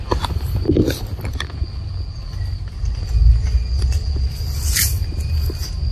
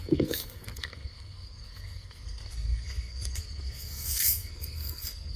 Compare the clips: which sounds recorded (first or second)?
first